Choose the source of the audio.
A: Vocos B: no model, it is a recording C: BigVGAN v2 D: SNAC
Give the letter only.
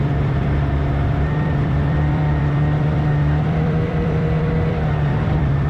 C